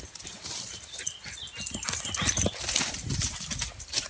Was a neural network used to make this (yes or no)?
no